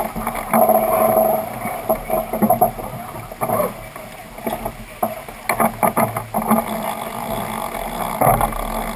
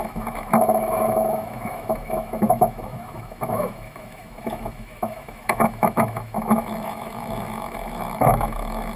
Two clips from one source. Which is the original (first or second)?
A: first